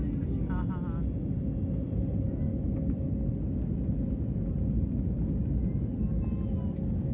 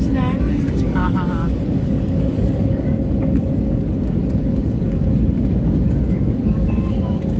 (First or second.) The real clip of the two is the first